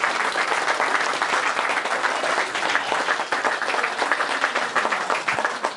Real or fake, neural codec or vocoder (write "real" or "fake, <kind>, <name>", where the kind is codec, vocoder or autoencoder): real